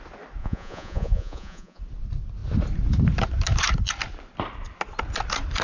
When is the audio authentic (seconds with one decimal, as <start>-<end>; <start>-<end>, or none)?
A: 0.0-0.4; 1.8-5.6